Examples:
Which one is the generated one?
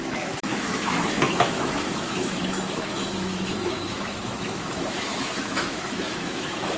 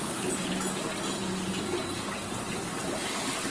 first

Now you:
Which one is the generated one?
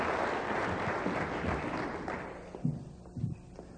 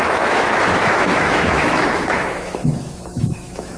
second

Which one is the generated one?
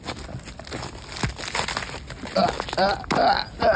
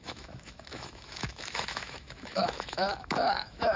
second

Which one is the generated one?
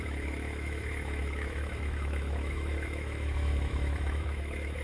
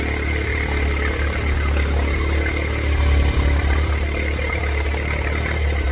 first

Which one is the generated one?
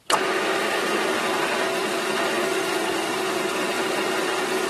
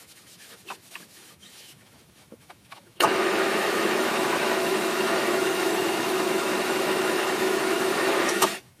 second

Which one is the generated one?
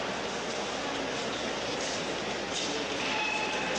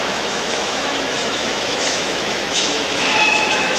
second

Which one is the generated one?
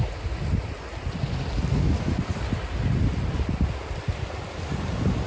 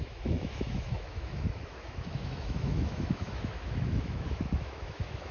second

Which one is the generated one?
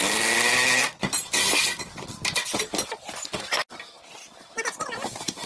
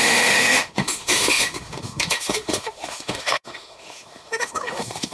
second